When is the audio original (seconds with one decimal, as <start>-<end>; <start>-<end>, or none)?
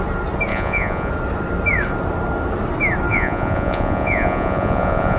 0.0-0.5; 1.1-3.1